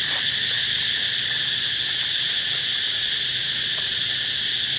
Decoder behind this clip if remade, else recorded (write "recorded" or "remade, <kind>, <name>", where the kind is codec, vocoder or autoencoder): recorded